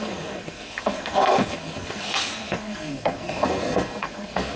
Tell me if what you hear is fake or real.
fake